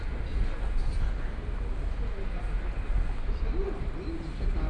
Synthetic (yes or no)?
no